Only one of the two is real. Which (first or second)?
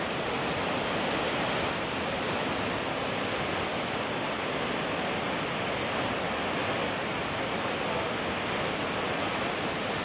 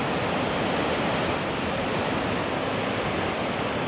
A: first